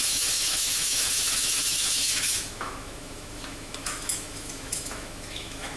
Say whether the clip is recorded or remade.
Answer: remade